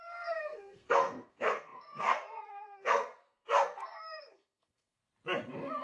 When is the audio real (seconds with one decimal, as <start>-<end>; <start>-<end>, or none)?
5.0-5.8